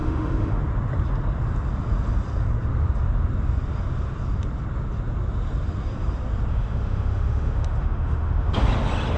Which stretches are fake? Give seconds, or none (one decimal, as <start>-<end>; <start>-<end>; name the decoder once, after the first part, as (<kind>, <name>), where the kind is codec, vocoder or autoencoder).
0.0-0.6 (autoencoder, DAC-VAE); 6.5-8.5